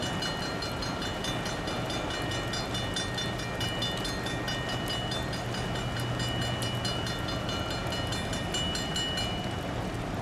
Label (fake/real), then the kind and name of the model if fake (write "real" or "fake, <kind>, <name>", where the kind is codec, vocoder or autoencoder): real